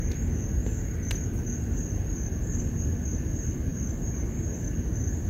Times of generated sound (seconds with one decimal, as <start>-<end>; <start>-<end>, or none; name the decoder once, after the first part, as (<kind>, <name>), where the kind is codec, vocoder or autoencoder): none